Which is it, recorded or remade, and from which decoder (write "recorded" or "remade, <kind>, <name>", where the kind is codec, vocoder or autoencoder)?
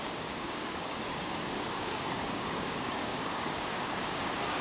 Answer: remade, codec, DAC